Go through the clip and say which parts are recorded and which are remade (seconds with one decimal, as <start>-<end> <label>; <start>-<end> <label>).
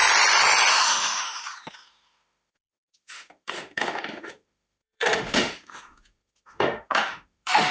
0.0-0.7 recorded; 0.7-7.7 remade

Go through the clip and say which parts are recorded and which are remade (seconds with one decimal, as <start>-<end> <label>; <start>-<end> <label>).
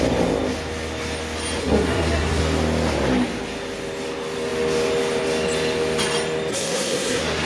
0.0-1.6 recorded; 1.6-2.4 remade; 2.4-6.5 recorded; 6.5-7.5 remade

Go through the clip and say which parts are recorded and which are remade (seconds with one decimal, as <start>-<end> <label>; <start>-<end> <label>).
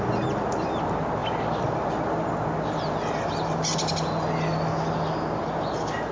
0.0-6.1 recorded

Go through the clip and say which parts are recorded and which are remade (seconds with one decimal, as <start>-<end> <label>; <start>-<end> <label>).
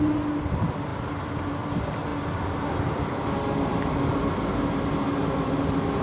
0.0-6.0 recorded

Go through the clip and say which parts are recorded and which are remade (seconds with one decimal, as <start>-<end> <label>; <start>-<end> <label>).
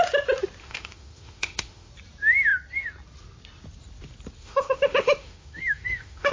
0.0-0.6 recorded; 0.6-1.9 remade; 1.9-4.4 recorded; 4.4-6.3 remade